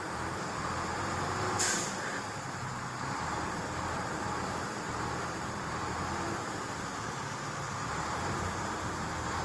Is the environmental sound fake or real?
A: fake